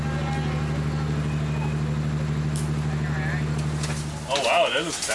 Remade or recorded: recorded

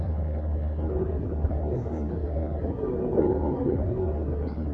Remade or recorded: remade